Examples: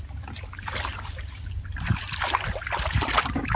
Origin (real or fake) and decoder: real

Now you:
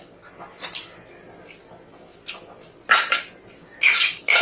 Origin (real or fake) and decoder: real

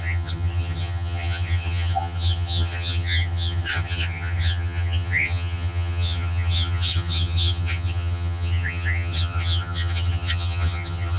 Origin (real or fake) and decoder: fake, vocoder, HiFi-GAN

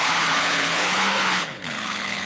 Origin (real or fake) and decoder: fake, codec, HILCodec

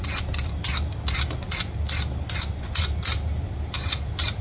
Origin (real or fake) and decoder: real